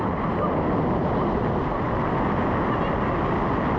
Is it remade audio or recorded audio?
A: recorded